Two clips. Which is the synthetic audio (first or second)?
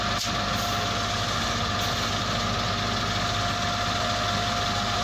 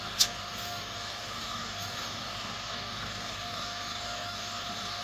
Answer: second